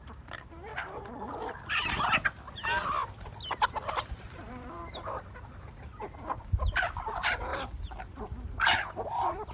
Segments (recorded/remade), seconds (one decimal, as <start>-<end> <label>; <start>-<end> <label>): 0.0-0.7 remade; 0.7-3.9 recorded; 3.9-7.5 remade; 7.5-8.1 recorded; 8.1-9.5 remade